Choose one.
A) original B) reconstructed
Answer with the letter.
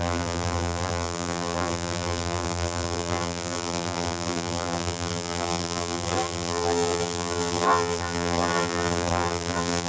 B